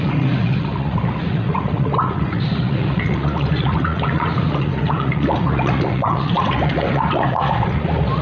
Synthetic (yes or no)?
yes